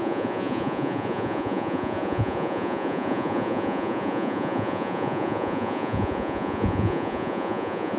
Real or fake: fake